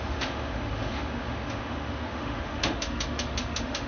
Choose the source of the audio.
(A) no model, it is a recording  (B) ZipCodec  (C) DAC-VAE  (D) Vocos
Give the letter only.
C